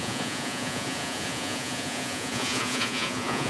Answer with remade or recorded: remade